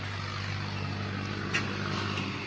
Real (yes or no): yes